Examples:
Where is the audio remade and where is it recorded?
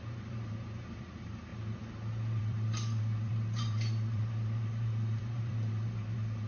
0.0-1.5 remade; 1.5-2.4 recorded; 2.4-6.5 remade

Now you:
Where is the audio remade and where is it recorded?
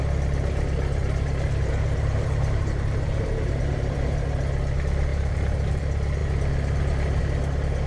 0.0-1.0 recorded; 1.0-4.3 remade; 4.3-5.1 recorded; 5.1-5.8 remade; 5.8-7.9 recorded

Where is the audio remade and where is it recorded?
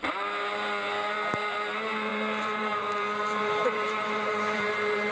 0.0-2.1 recorded; 2.1-5.1 remade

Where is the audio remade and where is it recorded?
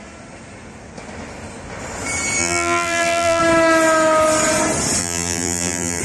0.0-2.4 recorded; 2.4-3.4 remade; 3.4-5.0 recorded; 5.0-6.0 remade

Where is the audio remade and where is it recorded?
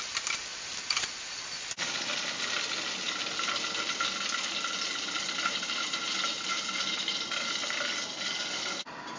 0.0-4.9 recorded; 4.9-7.1 remade; 7.1-9.2 recorded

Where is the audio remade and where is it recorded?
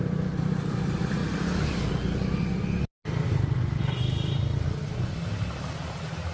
0.0-0.7 recorded; 0.7-1.2 remade; 1.2-5.0 recorded; 5.0-6.3 remade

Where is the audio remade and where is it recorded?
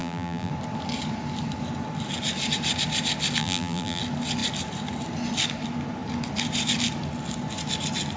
0.0-0.5 remade; 0.5-3.4 recorded; 3.4-4.0 remade; 4.0-8.2 recorded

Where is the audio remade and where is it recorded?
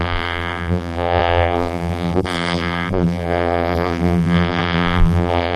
0.0-5.6 remade